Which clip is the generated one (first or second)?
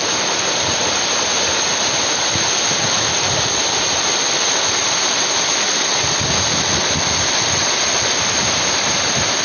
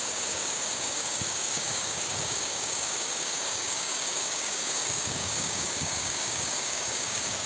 second